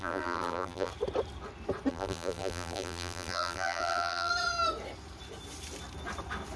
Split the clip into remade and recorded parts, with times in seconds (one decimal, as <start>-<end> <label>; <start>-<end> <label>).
0.0-0.9 remade; 0.9-1.9 recorded; 1.9-4.3 remade; 4.3-6.6 recorded